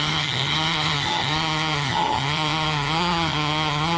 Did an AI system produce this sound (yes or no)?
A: yes